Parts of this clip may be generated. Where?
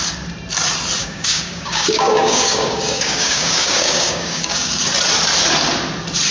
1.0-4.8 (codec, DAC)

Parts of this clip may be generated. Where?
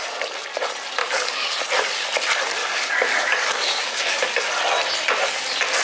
1.0-1.6 (codec, DAC); 2.6-4.3